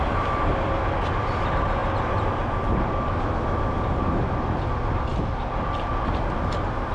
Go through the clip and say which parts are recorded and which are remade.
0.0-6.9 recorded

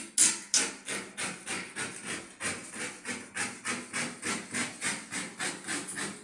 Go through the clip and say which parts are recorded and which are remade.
0.0-2.6 recorded; 2.6-3.7 remade; 3.7-6.2 recorded

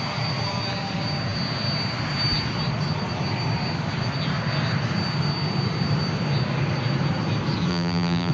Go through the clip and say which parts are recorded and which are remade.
0.0-7.7 recorded; 7.7-8.3 remade

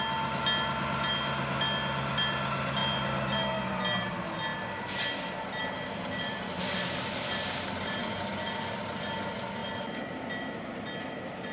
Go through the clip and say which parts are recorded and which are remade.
0.0-11.5 recorded